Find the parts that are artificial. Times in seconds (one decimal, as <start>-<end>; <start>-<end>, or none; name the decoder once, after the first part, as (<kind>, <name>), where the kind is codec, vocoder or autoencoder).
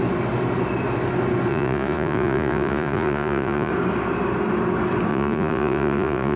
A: 1.5-3.7 (vocoder, Vocos); 5.1-6.4